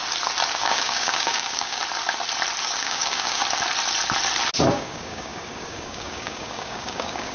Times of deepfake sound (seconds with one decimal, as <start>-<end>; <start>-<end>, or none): 0.5-1.8; 2.6-3.4; 4.7-7.3